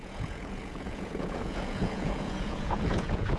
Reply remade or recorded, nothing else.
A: remade